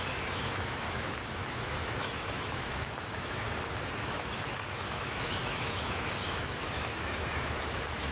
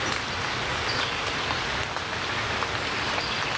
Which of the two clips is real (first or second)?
second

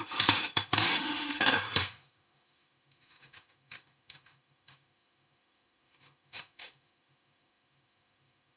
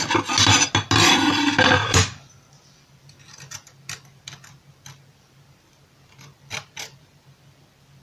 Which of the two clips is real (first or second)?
second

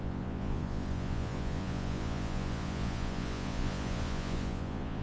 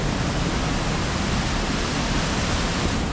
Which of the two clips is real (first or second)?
second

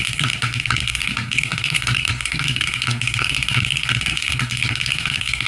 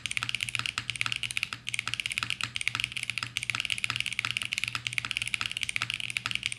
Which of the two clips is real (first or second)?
second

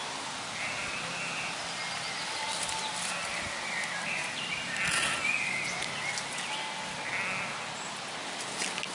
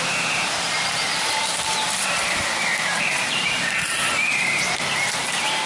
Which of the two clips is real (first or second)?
first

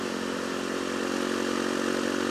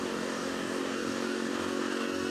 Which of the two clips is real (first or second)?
first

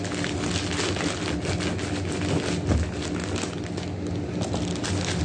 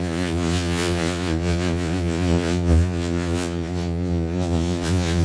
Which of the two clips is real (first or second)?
first